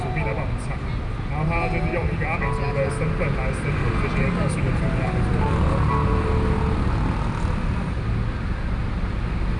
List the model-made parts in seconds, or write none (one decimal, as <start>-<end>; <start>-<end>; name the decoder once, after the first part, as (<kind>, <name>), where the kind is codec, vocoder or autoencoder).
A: 4.2-4.7 (codec, DAC)